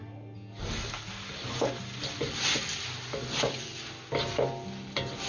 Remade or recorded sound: recorded